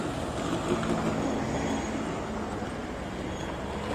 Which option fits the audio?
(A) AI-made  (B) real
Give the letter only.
B